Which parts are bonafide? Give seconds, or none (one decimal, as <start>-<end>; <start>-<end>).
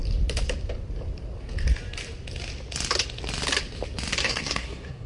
0.0-4.2